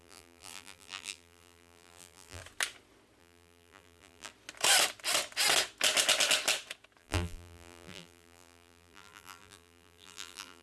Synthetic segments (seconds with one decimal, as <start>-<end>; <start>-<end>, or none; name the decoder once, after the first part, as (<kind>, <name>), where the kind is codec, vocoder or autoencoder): 0.0-2.4 (vocoder, BigVGAN v2); 3.2-4.3; 7.0-10.6